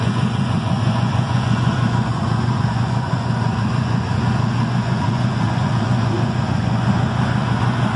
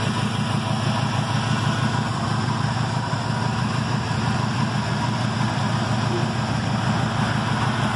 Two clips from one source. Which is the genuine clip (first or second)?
second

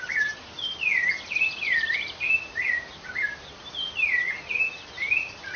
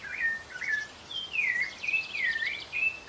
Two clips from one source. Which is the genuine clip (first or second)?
second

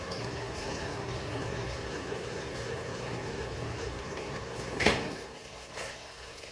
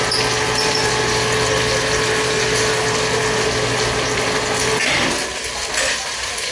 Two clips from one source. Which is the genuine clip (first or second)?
second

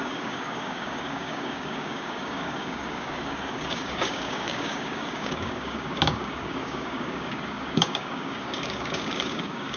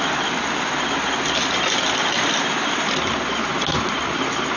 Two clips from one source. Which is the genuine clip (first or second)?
second